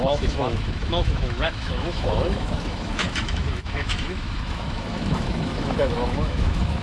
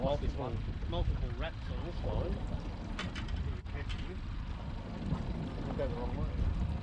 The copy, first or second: first